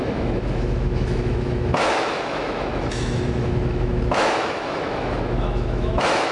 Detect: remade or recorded remade